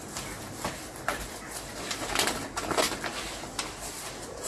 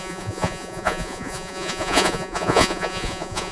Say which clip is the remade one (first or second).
second